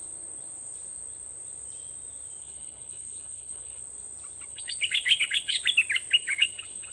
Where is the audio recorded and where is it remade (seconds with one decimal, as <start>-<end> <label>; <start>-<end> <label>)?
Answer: 0.0-2.4 recorded; 2.4-3.8 remade; 3.8-4.5 recorded; 4.5-5.6 remade; 5.6-6.2 recorded; 6.2-6.9 remade